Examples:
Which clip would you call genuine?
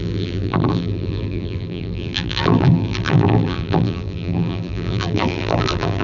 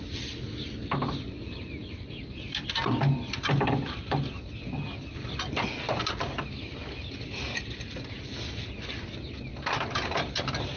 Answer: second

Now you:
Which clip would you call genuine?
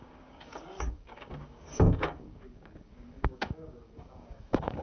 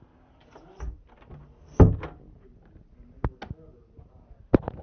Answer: second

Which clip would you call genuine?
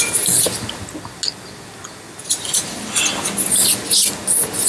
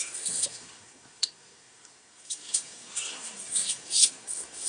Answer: first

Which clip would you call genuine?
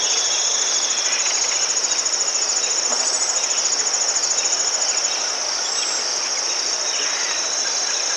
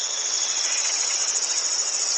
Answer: first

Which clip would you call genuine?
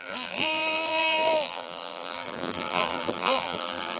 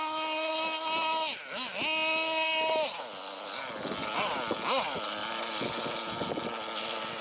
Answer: second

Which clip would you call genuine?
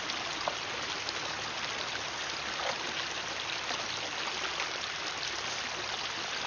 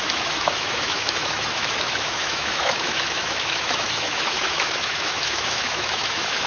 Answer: first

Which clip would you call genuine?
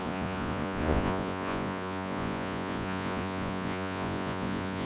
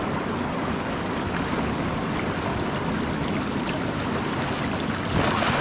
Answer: second